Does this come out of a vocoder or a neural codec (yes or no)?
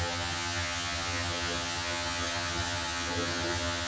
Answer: yes